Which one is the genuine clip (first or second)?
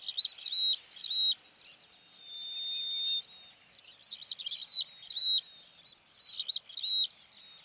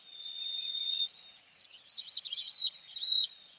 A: first